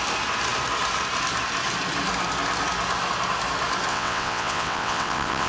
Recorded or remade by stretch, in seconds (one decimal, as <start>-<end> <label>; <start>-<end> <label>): 0.0-3.9 recorded; 3.9-5.5 remade